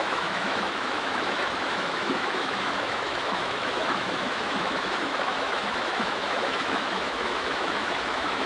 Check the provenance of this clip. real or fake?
fake